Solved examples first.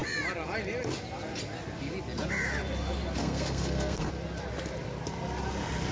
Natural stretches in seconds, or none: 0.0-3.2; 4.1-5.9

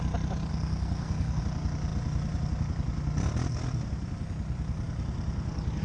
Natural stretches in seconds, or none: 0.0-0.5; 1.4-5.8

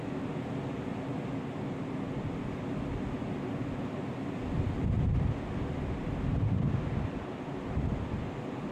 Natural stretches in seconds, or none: 0.0-8.7